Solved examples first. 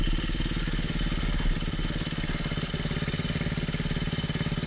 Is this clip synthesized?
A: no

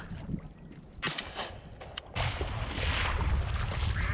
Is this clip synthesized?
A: no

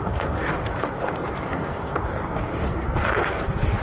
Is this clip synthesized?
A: yes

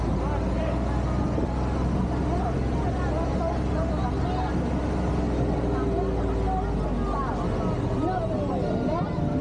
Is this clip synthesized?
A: no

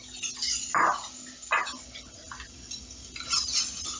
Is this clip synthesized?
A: no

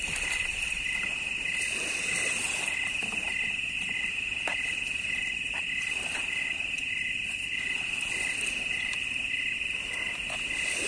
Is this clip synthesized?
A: no